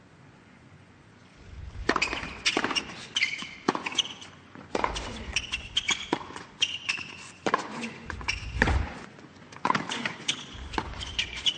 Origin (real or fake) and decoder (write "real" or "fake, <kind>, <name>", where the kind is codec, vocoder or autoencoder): fake, vocoder, Vocos